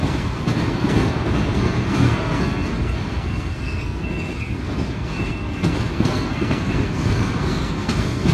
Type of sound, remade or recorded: remade